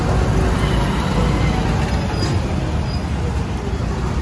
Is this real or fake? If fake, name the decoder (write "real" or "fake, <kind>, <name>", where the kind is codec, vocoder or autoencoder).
real